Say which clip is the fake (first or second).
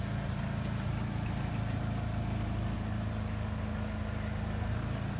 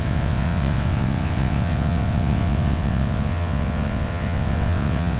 second